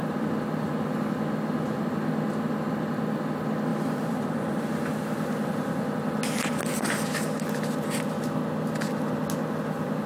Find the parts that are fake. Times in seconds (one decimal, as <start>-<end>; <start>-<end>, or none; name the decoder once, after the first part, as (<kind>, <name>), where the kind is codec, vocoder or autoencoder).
3.7-4.6 (vocoder, BigVGAN v2)

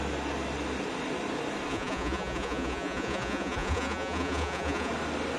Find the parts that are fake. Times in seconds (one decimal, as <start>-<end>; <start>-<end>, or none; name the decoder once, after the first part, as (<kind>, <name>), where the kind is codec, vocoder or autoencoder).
1.7-4.9 (vocoder, Vocos)

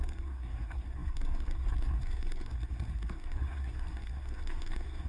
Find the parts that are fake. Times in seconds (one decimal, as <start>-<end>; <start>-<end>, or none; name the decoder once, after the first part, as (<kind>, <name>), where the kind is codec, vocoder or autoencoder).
0.0-5.1 (codec, SNAC)

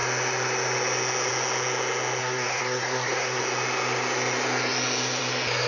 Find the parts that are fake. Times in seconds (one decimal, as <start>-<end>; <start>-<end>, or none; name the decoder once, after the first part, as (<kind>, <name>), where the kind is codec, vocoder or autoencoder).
2.2-3.4 (codec, SNAC)

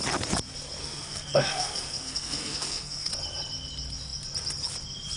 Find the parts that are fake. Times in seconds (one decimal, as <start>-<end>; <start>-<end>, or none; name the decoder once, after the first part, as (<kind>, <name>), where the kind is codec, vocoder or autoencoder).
0.8-3.1 (codec, SNAC)

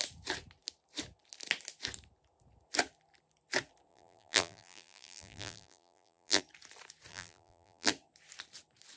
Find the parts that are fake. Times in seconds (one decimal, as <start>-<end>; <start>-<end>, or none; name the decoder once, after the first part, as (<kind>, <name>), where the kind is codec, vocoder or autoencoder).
3.9-6.4 (vocoder, BigVGAN v2); 7.1-7.9

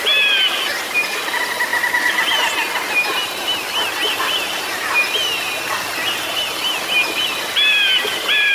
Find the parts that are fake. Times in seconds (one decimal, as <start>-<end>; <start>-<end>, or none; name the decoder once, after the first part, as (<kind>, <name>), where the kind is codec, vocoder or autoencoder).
none

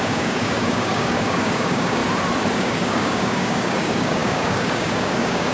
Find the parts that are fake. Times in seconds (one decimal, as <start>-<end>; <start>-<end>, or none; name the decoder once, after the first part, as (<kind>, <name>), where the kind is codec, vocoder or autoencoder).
0.0-2.0 (codec, DAC); 2.6-5.5